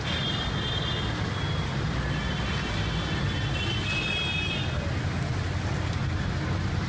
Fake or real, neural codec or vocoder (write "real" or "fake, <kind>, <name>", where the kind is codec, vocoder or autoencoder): real